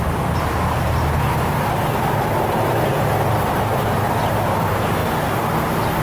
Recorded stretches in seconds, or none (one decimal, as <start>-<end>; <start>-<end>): 5.0-6.0